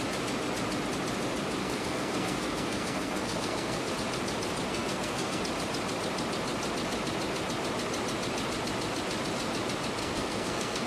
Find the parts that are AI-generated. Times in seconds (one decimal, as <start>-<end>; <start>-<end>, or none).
1.6-3.9; 4.7-5.4; 10.0-10.9